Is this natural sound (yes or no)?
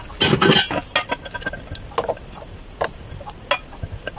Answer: yes